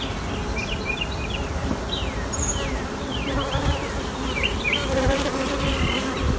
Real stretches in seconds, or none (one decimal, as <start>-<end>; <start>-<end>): 0.0-1.6; 5.4-6.4

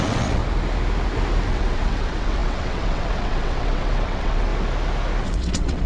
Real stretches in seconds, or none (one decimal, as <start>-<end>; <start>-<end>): 0.4-1.5; 4.5-5.2